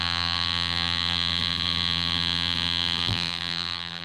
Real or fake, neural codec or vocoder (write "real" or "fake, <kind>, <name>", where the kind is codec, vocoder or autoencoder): fake, vocoder, BigVGAN v2